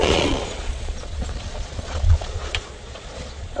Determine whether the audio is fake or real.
fake